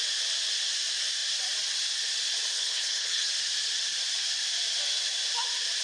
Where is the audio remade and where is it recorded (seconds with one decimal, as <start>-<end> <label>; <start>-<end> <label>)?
0.0-2.5 recorded; 2.5-3.3 remade; 3.3-5.8 recorded